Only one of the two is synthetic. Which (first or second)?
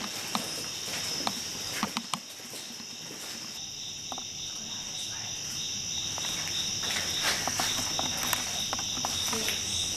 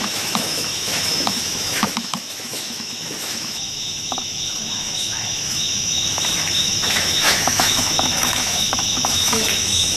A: second